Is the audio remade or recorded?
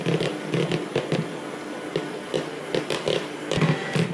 recorded